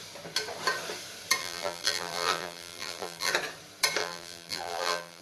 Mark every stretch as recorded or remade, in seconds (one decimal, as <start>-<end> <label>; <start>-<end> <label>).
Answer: 0.0-1.4 recorded; 1.4-3.3 remade; 3.3-4.0 recorded; 4.0-5.2 remade